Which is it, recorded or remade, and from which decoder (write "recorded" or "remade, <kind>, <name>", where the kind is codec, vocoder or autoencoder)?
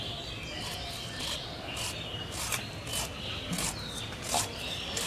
recorded